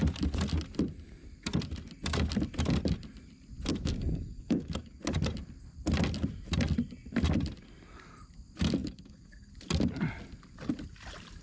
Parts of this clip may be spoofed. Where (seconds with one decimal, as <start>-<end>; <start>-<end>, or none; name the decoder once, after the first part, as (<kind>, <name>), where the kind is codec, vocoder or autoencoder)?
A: 3.7-5.0 (codec, DAC); 8.8-9.5